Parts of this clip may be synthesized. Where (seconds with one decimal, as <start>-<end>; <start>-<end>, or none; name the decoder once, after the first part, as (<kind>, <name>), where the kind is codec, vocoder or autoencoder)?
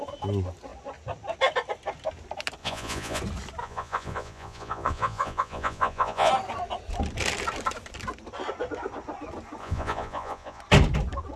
2.6-3.2 (vocoder, Vocos); 3.6-6.3; 9.6-10.6